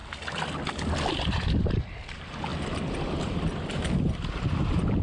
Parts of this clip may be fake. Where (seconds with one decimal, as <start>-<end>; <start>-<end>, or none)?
none